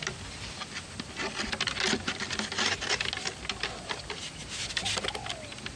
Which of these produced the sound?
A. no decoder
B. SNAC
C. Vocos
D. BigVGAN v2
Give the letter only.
A